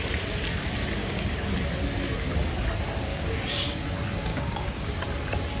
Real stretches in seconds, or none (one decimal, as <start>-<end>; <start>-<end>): 0.0-1.0; 1.5-3.1; 3.6-4.3; 5.0-5.6